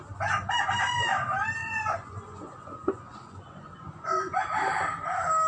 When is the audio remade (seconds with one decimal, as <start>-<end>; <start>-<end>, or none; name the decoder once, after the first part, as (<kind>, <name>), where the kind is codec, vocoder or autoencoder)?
1.6-4.4 (vocoder, Vocos)